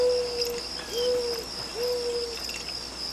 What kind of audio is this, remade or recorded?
recorded